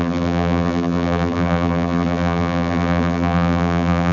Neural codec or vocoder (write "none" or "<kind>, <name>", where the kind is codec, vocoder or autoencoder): vocoder, BigVGAN v2